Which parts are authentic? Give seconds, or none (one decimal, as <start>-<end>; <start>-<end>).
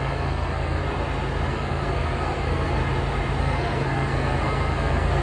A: 0.8-1.5; 2.8-3.4